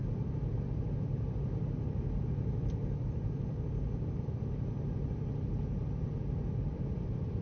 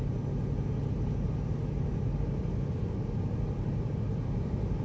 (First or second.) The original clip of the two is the second